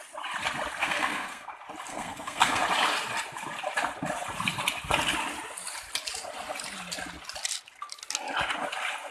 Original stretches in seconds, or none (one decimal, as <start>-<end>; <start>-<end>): 0.0-0.8; 1.5-1.9; 2.6-9.1